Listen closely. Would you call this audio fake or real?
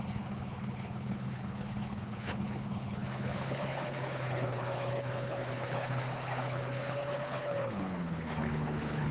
fake